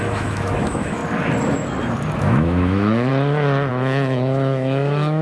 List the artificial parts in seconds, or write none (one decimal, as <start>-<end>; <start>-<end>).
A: 0.0-1.0; 2.2-3.1; 3.7-5.2